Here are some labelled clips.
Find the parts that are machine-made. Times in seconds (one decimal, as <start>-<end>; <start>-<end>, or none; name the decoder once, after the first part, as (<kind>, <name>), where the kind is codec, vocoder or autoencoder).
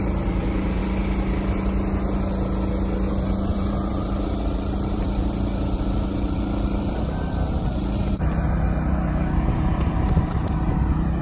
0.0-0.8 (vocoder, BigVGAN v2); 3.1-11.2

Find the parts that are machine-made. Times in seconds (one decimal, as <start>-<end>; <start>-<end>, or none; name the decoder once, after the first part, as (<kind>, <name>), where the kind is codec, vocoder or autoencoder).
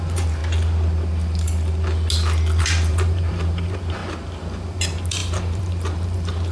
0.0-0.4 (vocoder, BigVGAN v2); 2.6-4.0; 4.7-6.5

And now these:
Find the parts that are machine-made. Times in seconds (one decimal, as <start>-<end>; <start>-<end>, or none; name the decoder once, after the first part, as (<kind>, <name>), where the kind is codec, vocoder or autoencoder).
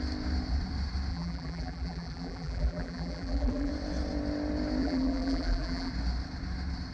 1.1-3.7 (vocoder, BigVGAN v2); 4.8-5.9